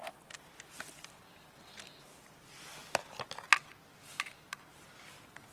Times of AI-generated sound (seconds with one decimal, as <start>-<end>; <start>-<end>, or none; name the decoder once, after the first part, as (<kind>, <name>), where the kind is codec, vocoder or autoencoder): 0.0-1.5 (vocoder, BigVGAN v2)